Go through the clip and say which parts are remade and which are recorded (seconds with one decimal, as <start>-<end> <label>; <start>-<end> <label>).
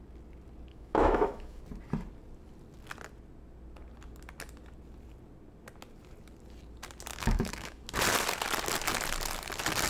0.0-0.7 recorded; 0.7-1.6 remade; 1.6-7.1 recorded; 7.1-7.8 remade; 7.8-9.9 recorded